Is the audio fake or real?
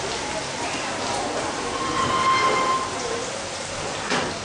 real